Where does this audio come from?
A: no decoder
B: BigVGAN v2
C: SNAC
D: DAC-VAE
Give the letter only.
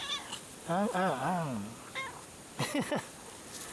A